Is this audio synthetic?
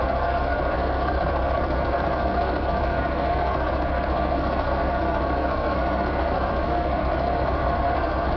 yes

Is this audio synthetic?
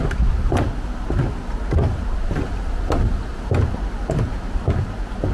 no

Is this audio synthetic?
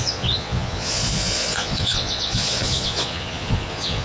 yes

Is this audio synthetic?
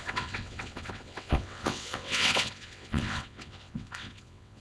yes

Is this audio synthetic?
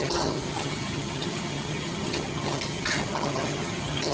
yes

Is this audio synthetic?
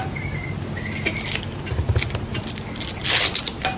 no